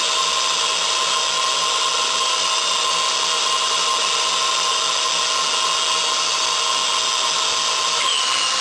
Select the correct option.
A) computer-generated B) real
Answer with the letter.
B